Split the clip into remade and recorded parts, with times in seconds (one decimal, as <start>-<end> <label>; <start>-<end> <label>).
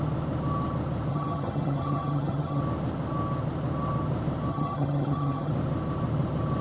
0.0-1.1 recorded; 1.1-2.6 remade; 2.6-4.5 recorded; 4.5-5.5 remade; 5.5-6.6 recorded